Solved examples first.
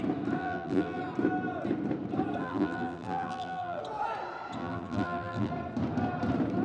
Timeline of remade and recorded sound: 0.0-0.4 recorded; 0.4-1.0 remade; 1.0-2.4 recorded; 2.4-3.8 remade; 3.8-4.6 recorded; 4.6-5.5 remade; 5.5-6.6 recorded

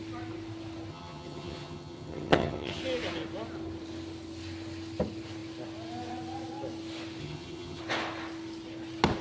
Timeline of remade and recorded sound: 0.0-0.9 recorded; 0.9-2.8 remade; 2.8-7.2 recorded; 7.2-7.8 remade; 7.8-9.2 recorded

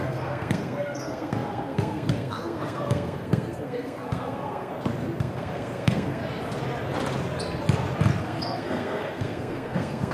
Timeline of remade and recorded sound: 0.0-4.7 remade; 4.7-5.2 recorded; 5.2-6.2 remade; 6.2-8.2 recorded; 8.2-10.1 remade

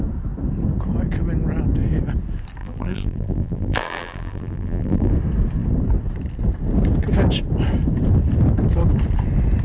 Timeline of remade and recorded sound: 0.0-2.6 recorded; 2.6-5.1 remade; 5.1-9.6 recorded

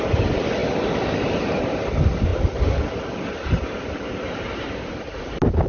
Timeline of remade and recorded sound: 0.0-2.3 recorded; 2.3-5.3 remade; 5.3-5.7 recorded

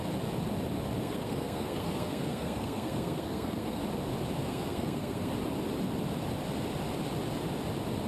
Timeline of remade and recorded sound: 0.0-1.0 recorded; 1.0-3.8 remade; 3.8-4.4 recorded; 4.4-5.3 remade; 5.3-8.1 recorded

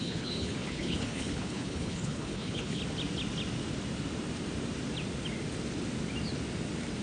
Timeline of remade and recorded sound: 0.0-2.8 remade; 2.8-7.0 recorded